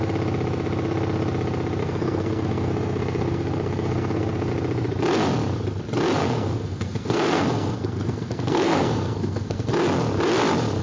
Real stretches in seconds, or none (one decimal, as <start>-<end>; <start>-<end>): 0.0-1.8; 4.5-6.2; 9.7-10.8